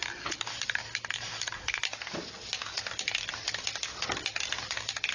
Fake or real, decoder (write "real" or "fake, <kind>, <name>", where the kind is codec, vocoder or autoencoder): real